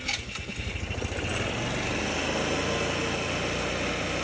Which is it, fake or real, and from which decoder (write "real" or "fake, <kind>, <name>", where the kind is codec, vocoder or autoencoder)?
real